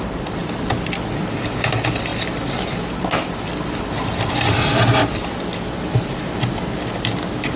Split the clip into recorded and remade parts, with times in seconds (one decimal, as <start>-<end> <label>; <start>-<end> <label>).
0.0-0.4 recorded; 0.4-1.5 remade; 1.5-4.6 recorded; 4.6-6.2 remade; 6.2-7.6 recorded